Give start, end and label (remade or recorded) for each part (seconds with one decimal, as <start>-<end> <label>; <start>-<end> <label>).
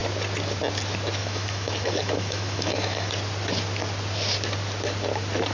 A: 0.0-1.2 recorded; 1.2-3.1 remade; 3.1-5.5 recorded